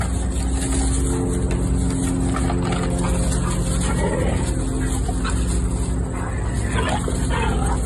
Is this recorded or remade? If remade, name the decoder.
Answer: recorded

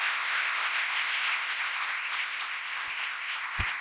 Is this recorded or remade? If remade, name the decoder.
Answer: remade, codec, ZipCodec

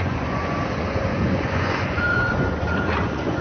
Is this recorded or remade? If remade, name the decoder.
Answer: remade, vocoder, Vocos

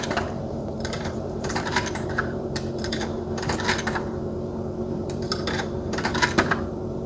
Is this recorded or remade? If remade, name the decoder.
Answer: remade, vocoder, BigVGAN v2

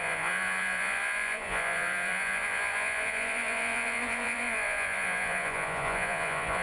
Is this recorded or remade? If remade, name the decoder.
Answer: remade, vocoder, Vocos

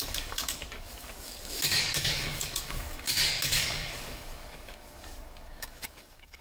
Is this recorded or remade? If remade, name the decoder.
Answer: remade, codec, DAC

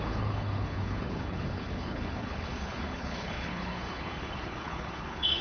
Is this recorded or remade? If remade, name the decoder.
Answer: remade, codec, HILCodec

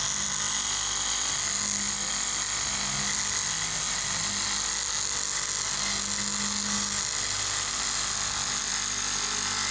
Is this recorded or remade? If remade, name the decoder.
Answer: recorded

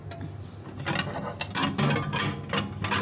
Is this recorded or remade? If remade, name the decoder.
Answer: recorded